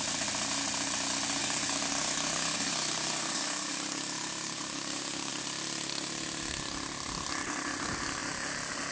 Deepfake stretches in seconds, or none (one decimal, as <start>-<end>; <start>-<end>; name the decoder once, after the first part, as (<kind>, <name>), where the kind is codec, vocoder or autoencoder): 1.4-5.3 (codec, DAC)